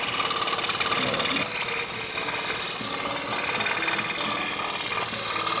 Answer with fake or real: real